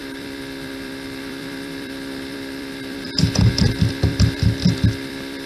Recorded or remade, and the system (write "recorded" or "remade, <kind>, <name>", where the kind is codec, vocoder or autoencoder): remade, vocoder, BigVGAN v2